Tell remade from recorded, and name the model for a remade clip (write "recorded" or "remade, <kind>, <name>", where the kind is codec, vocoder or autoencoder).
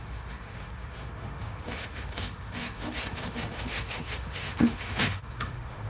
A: remade, autoencoder, DAC-VAE